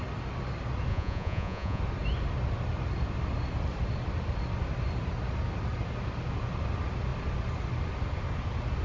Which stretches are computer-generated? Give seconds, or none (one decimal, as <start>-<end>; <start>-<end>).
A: 0.9-1.8